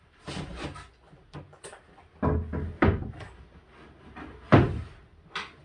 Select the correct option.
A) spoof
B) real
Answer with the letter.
B